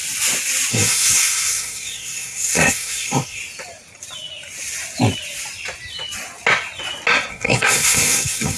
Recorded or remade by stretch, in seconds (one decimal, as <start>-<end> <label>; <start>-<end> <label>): 0.0-0.7 recorded; 0.7-3.4 remade; 3.4-7.3 recorded; 7.3-8.6 remade